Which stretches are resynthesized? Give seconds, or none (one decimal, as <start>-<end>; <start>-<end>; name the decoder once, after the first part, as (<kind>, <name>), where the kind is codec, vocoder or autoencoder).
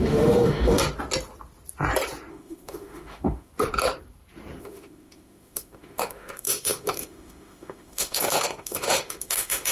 0.0-0.8 (autoencoder, DAC-VAE); 2.3-3.5; 4.6-9.7